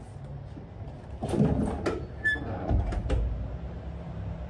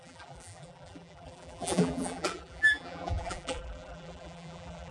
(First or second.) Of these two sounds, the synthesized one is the second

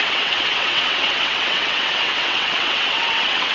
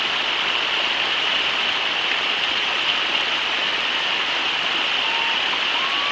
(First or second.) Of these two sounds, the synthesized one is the first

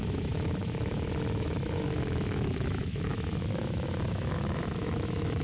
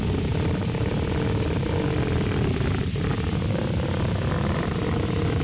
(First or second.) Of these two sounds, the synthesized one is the first